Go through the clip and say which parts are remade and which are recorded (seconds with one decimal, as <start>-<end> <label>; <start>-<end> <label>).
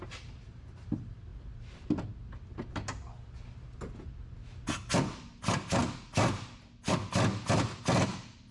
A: 0.0-8.5 recorded